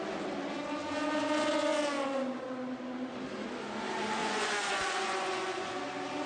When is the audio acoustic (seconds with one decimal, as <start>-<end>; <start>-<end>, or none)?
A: 0.0-4.2; 5.8-6.3